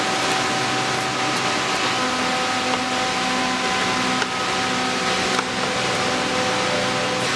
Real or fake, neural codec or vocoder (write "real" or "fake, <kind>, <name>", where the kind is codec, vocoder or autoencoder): real